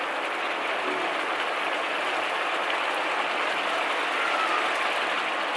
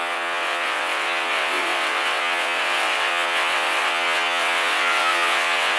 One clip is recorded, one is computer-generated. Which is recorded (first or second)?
first